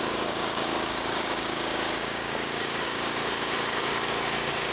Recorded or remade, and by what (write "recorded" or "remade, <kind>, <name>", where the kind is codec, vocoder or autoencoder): remade, codec, DAC